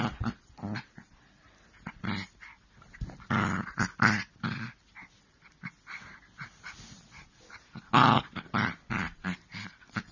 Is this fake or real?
real